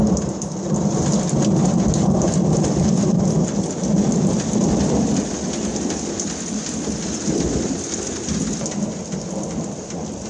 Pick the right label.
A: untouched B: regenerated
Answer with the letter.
A